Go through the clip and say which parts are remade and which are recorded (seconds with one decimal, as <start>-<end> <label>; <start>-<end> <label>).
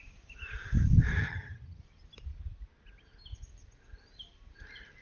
0.0-1.2 recorded; 1.2-1.8 remade; 1.8-5.0 recorded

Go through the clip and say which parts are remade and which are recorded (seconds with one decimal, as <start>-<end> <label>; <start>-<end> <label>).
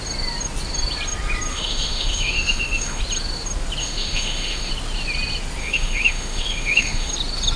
0.0-1.5 recorded; 1.5-3.0 remade; 3.0-3.8 recorded; 3.8-4.7 remade; 4.7-5.6 recorded; 5.6-7.1 remade; 7.1-7.6 recorded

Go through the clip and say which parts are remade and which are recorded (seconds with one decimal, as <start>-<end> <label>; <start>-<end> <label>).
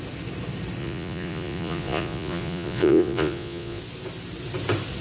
0.0-0.8 recorded; 0.8-3.8 remade; 3.8-5.0 recorded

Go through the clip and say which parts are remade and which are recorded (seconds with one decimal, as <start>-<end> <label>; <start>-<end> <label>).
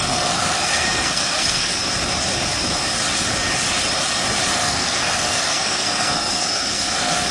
0.0-1.7 remade; 1.7-4.5 recorded; 4.5-7.3 remade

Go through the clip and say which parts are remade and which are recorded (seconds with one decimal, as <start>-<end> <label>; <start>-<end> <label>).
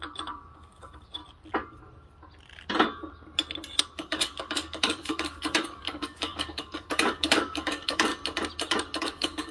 0.0-1.2 remade; 1.2-3.8 recorded; 3.8-8.1 remade; 8.1-9.0 recorded; 9.0-9.5 remade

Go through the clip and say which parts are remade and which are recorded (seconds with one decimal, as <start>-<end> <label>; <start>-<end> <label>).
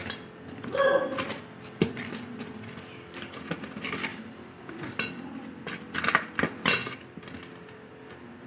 0.0-4.1 recorded; 4.1-4.6 remade; 4.6-8.5 recorded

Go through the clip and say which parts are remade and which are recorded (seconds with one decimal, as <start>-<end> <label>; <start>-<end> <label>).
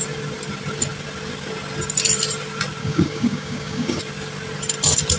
0.0-2.8 recorded; 2.8-4.0 remade; 4.0-5.2 recorded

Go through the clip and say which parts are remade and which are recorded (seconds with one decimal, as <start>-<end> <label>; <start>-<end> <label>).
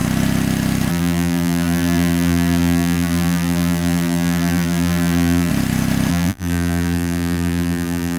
0.0-0.9 recorded; 0.9-5.5 remade; 5.5-6.1 recorded; 6.1-8.2 remade